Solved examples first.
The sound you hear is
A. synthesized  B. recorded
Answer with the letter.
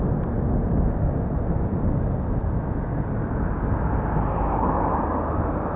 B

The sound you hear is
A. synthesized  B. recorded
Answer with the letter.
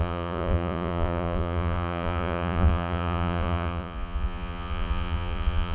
A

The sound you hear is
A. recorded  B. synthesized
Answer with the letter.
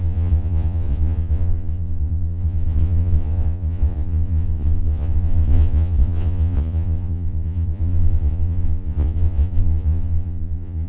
B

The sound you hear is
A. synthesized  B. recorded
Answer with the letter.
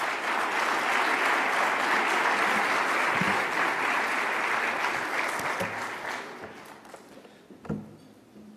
B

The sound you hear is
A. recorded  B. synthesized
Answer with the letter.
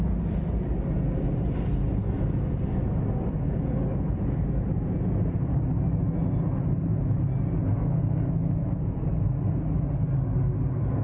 A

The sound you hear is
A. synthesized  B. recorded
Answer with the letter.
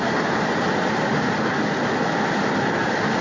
B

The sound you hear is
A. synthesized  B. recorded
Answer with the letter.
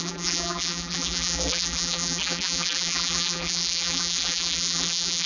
A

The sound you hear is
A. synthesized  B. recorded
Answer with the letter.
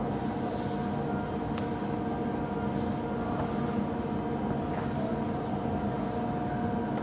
B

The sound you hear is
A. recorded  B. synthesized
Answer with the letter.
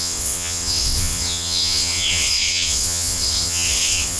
B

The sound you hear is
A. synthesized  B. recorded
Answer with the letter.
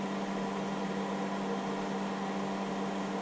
B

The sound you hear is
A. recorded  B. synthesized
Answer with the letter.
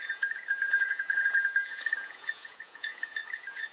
B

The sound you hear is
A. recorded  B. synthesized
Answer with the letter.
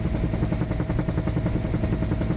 A